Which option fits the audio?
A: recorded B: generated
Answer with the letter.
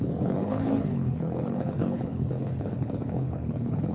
B